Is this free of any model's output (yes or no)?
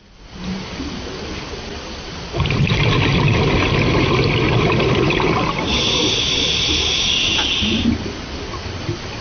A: yes